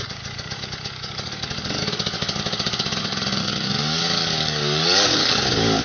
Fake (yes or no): yes